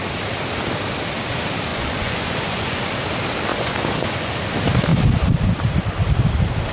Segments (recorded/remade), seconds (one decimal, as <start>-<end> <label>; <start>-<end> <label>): 0.0-1.7 recorded; 1.7-2.8 remade; 2.8-3.5 recorded; 3.5-4.3 remade; 4.3-6.7 recorded